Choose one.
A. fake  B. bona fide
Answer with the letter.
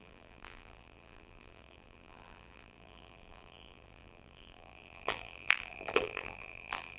A